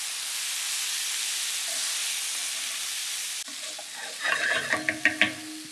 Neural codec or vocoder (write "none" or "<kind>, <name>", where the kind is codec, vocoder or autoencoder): none